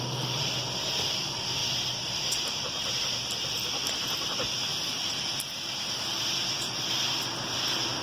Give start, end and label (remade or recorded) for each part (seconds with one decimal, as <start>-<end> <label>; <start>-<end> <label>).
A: 0.0-8.0 recorded